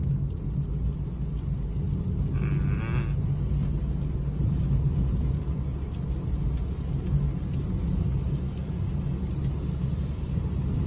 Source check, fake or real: real